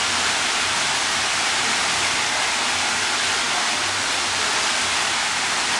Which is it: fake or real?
real